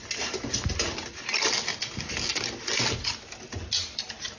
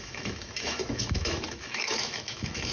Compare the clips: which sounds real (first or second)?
first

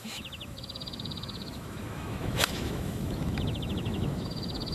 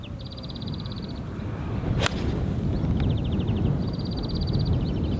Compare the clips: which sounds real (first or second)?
second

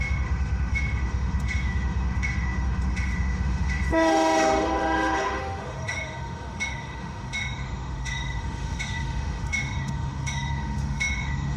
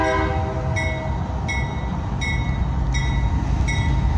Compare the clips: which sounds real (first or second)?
second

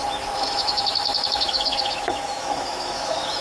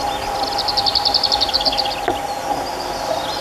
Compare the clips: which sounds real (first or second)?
second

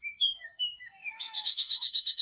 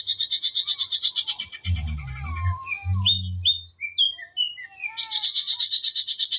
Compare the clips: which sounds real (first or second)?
second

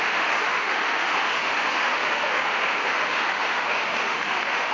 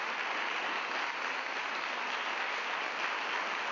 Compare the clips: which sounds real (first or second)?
second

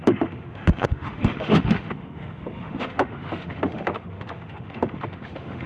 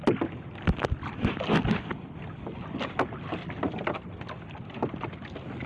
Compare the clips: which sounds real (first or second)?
second